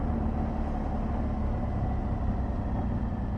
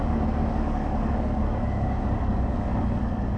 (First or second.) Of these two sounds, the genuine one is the first